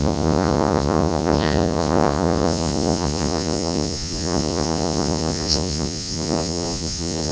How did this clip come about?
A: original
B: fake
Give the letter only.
B